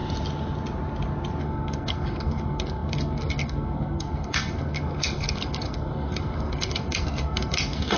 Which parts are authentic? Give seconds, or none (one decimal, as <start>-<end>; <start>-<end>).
0.0-1.4